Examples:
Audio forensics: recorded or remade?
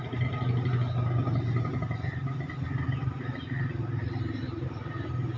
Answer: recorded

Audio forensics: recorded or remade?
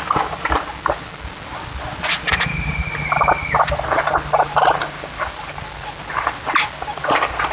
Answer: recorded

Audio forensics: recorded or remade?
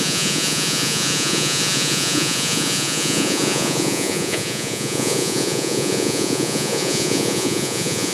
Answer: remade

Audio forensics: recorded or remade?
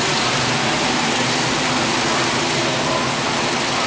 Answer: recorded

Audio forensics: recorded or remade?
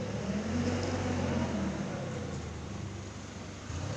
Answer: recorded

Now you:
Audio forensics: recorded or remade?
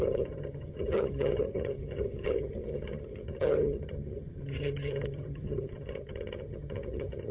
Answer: remade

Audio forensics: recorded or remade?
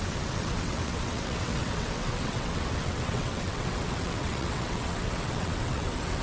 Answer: remade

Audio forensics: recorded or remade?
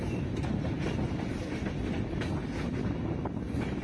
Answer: recorded